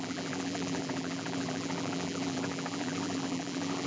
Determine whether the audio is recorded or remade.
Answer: remade